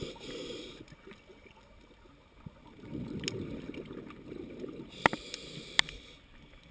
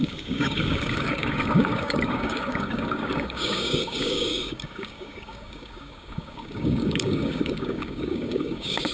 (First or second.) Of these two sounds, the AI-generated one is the second